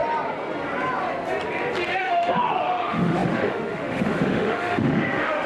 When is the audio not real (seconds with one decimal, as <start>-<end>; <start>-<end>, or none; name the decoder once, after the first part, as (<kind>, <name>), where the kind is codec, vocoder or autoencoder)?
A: 2.0-5.5 (autoencoder, DAC-VAE)